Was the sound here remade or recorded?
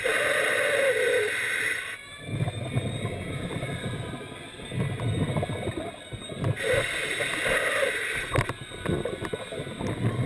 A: recorded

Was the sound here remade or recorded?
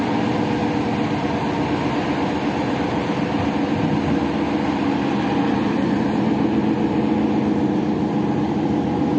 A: recorded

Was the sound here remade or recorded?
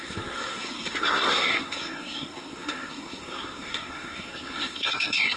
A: remade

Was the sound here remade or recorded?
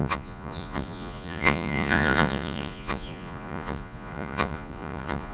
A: remade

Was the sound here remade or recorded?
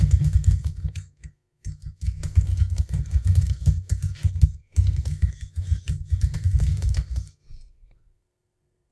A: remade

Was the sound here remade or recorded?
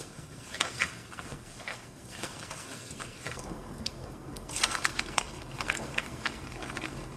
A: remade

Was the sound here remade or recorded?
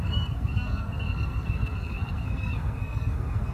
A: remade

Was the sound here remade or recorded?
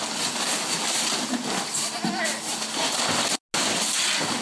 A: recorded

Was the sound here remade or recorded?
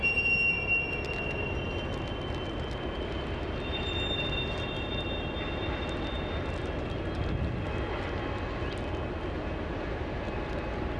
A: recorded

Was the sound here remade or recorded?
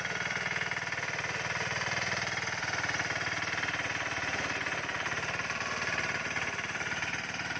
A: remade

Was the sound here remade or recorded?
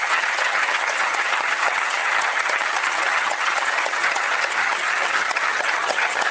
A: remade